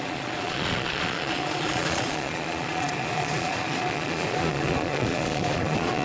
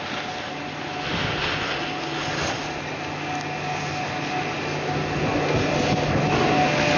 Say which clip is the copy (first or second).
first